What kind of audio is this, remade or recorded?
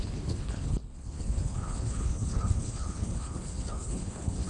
remade